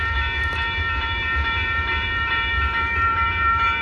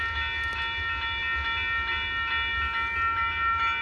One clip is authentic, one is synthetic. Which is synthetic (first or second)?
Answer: first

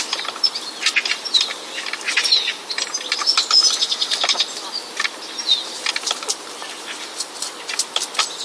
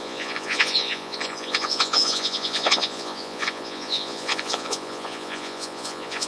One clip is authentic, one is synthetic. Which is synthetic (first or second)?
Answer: second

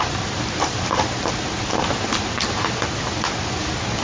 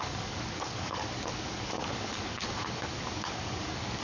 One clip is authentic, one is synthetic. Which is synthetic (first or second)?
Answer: second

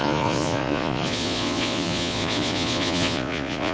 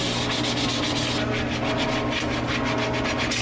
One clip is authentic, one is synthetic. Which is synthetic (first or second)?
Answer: first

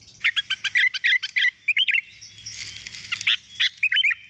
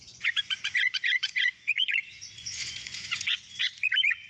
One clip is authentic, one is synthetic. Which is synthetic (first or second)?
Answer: second